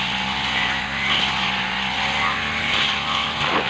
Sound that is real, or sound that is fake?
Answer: real